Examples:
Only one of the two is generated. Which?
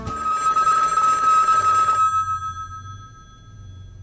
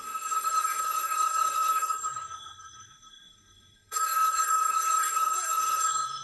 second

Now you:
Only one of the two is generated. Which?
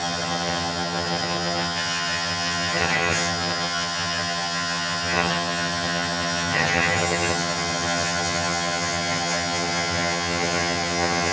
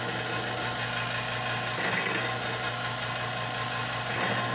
first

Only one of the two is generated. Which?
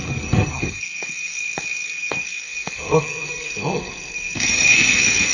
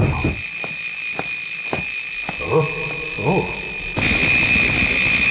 first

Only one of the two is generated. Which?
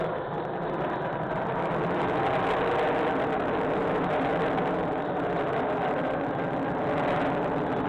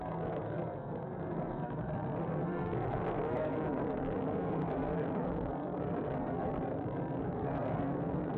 second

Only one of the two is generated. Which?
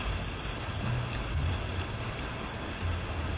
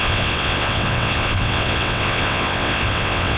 second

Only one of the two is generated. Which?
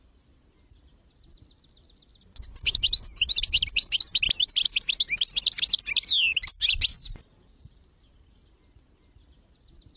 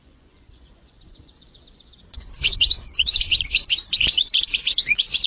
second